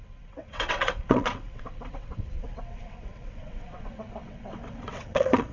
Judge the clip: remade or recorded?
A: remade